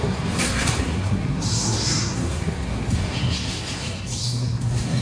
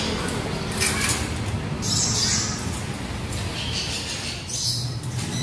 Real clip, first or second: second